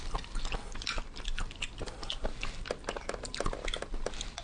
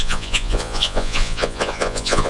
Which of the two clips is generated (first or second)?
second